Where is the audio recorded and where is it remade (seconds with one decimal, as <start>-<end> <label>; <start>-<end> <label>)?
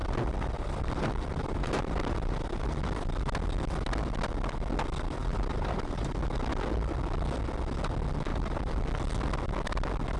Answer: 0.0-2.7 remade; 2.7-5.2 recorded; 5.2-6.2 remade; 6.2-8.3 recorded; 8.3-8.8 remade; 8.8-10.2 recorded